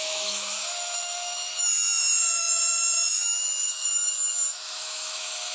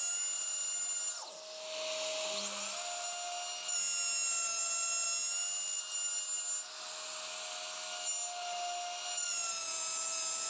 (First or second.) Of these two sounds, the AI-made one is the first